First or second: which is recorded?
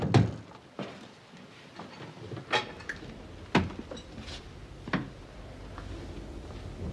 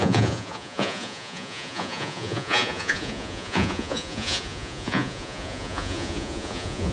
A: first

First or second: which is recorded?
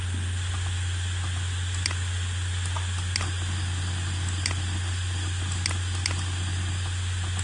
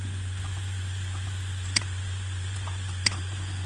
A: first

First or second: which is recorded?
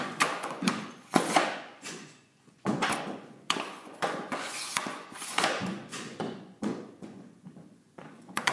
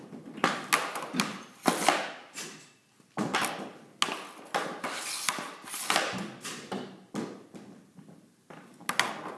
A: second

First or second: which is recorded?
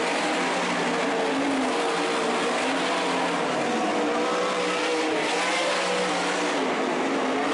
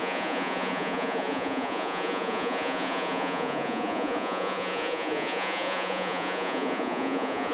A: first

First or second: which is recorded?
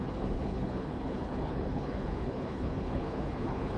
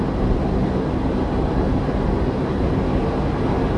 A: second